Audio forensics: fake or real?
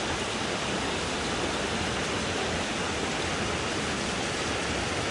fake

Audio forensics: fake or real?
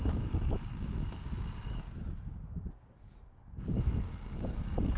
fake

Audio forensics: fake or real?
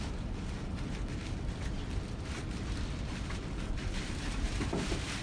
fake